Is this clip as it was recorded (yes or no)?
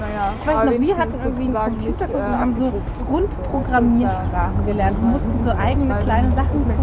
yes